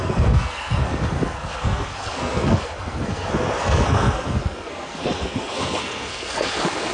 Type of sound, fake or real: fake